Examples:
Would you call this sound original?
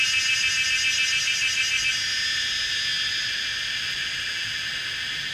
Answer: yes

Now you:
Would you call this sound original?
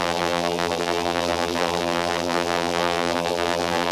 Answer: no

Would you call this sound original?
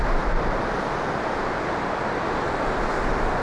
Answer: yes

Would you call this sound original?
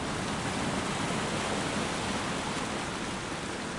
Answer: yes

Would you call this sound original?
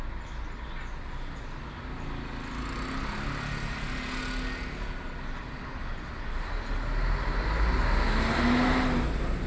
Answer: yes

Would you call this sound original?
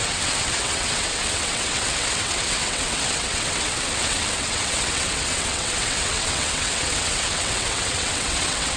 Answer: no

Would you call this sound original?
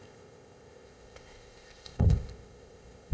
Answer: no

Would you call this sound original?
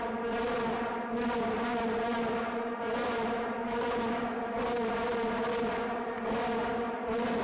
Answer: yes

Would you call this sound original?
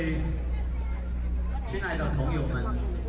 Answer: yes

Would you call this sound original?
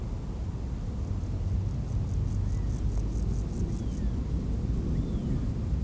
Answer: yes